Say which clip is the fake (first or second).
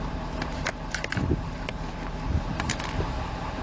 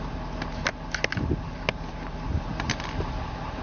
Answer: first